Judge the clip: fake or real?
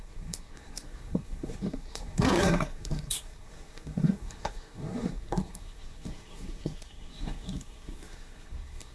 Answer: fake